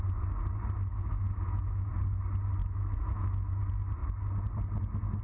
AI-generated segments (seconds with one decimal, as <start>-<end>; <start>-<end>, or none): 0.9-1.9; 2.6-3.6